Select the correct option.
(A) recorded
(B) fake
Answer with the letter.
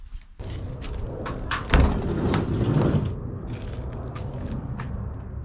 A